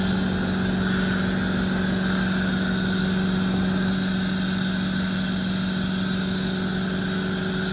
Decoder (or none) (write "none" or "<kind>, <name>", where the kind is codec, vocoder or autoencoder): none